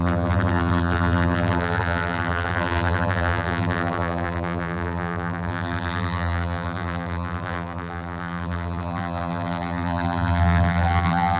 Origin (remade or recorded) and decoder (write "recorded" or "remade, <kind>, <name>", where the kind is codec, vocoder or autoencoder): remade, vocoder, BigVGAN v2